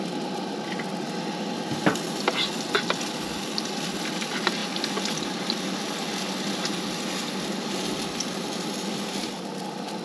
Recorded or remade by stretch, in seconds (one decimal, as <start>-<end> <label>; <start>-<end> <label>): 0.0-4.6 recorded; 4.6-5.8 remade; 5.8-9.2 recorded; 9.2-10.0 remade